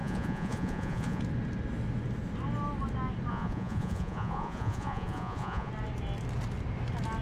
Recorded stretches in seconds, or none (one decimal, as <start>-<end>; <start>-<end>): 1.2-3.3; 5.7-7.2